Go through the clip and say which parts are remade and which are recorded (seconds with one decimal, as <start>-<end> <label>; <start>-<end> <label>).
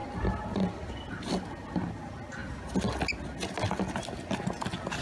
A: 0.0-5.0 recorded